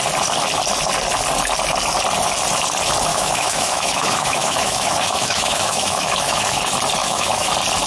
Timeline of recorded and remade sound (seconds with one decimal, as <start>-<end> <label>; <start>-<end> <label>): 0.0-3.1 recorded; 3.1-6.6 remade; 6.6-7.0 recorded; 7.0-7.5 remade; 7.5-7.9 recorded